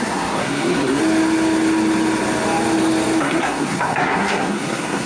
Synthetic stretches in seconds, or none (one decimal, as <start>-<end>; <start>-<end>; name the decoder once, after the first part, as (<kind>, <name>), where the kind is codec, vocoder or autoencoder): 0.0-1.0 (codec, SNAC); 3.2-5.1